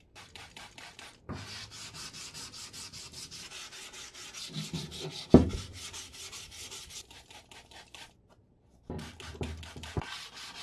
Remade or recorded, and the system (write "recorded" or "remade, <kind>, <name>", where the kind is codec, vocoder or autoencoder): recorded